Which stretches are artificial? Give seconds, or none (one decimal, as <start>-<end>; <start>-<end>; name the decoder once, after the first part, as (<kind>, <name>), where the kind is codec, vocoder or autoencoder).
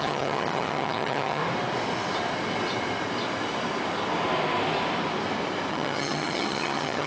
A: 0.0-1.4 (vocoder, HiFi-GAN); 5.7-7.1